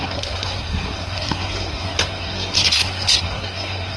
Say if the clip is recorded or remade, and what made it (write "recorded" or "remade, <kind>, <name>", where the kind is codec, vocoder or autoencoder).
remade, codec, SNAC